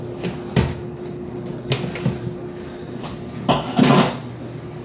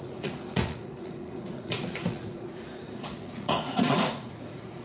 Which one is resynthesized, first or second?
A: second